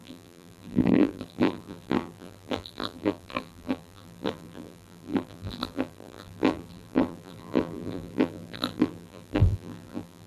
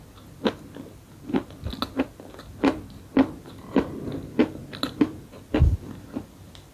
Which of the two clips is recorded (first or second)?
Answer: second